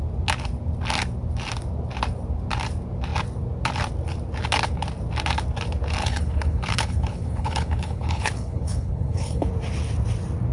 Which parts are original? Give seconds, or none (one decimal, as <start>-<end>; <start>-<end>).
0.0-6.0; 9.5-10.5